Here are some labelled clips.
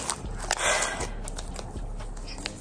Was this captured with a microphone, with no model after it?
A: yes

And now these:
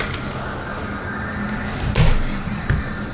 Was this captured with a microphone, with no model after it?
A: yes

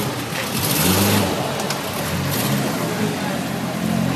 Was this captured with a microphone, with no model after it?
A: yes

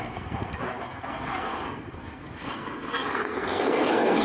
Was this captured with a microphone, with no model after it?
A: no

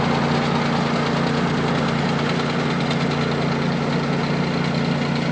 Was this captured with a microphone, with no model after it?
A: yes